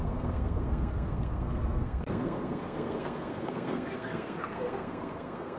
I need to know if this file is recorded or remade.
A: remade